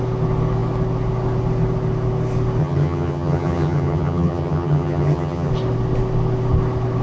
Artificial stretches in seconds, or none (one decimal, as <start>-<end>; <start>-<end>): 2.6-5.5